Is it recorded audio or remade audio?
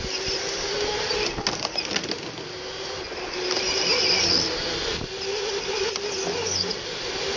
recorded